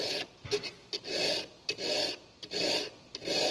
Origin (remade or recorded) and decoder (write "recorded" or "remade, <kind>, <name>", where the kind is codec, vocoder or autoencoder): recorded